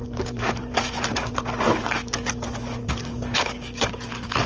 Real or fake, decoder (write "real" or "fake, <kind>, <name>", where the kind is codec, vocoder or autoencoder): fake, codec, DAC